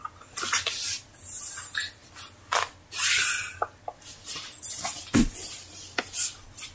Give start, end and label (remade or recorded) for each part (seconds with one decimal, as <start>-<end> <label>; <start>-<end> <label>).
0.0-6.7 recorded